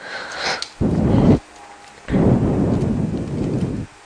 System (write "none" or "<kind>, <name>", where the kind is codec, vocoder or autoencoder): none